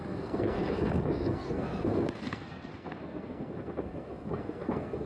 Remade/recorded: remade